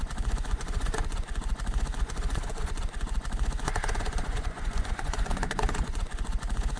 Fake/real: fake